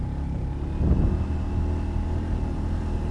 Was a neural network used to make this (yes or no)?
no